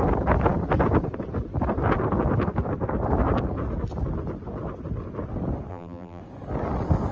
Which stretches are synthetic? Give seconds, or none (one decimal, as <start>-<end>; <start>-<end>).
5.7-6.2